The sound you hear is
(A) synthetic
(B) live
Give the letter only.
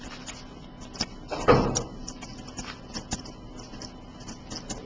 B